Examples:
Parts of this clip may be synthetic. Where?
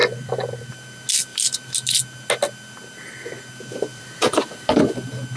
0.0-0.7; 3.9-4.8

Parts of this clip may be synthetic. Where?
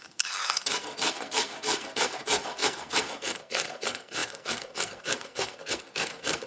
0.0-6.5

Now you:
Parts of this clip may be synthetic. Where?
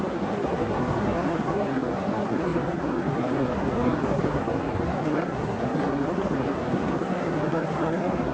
0.0-8.3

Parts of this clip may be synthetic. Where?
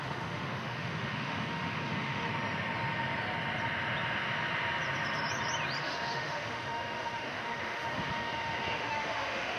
0.0-2.3; 5.8-9.6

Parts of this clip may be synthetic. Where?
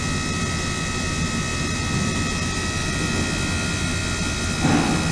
none